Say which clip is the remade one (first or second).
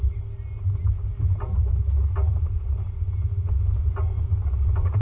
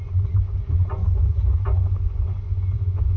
second